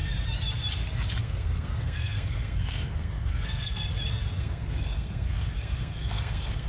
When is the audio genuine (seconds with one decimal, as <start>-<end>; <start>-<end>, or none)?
0.0-1.2; 3.9-4.4